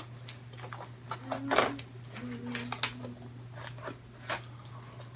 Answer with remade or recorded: recorded